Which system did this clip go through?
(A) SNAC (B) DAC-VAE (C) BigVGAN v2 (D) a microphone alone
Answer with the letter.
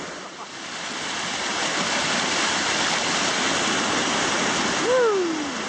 D